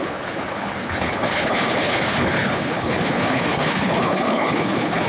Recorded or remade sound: remade